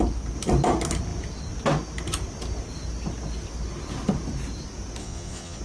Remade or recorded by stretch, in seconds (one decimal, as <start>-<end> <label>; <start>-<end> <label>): 0.0-5.0 recorded; 5.0-5.6 remade